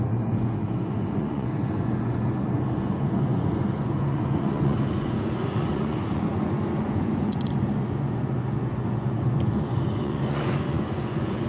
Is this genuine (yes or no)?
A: no